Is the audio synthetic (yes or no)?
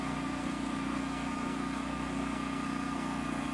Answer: yes